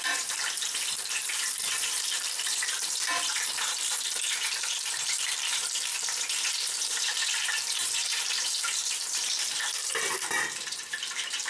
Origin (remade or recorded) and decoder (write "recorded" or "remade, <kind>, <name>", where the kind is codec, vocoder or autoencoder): remade, vocoder, BigVGAN v2